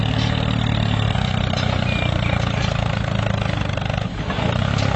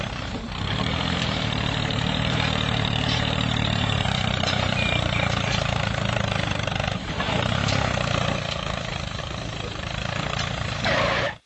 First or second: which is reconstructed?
second